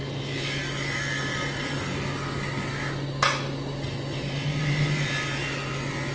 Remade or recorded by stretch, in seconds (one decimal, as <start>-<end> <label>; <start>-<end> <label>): 0.0-6.1 recorded